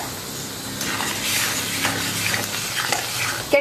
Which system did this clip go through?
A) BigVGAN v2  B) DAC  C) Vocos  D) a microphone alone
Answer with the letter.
D